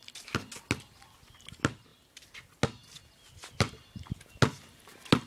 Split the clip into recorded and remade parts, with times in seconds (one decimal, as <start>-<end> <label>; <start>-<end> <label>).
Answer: 0.0-5.3 recorded